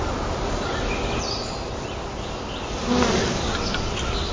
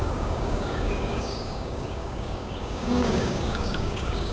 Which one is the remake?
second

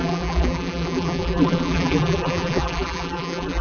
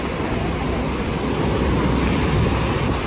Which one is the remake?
first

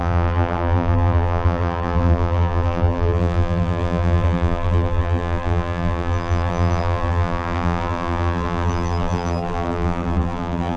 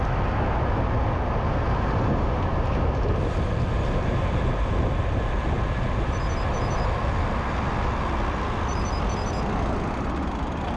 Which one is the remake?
first